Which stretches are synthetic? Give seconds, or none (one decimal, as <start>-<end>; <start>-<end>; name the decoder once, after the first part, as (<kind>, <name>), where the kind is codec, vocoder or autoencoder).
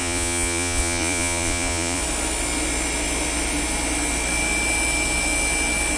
0.0-2.0 (vocoder, Vocos)